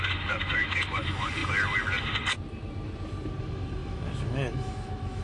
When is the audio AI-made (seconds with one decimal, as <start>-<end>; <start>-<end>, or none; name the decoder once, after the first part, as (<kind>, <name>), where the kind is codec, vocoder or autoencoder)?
0.0-1.4 (autoencoder, DAC-VAE); 3.4-5.2